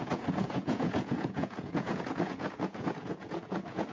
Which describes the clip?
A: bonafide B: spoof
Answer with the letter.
B